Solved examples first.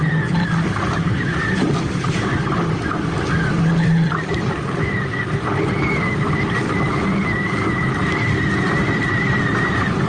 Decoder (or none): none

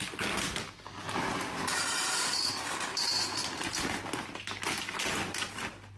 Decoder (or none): none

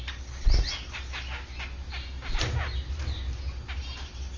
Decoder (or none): none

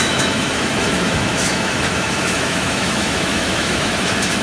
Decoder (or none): autoencoder, DAC-VAE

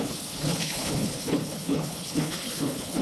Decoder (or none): codec, HILCodec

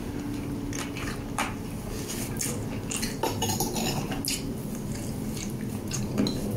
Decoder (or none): none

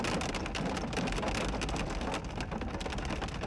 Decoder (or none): none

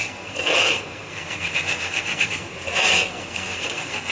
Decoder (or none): codec, SNAC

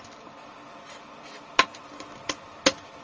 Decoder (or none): none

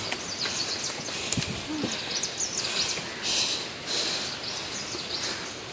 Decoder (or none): none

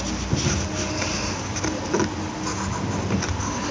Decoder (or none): none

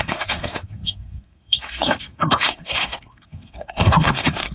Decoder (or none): codec, SNAC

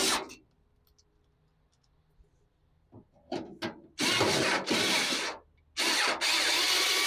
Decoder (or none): none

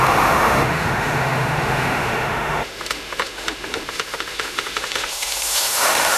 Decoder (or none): autoencoder, DAC-VAE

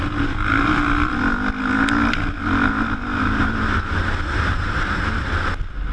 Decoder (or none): none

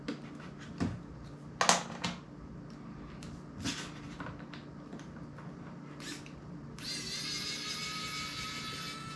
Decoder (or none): none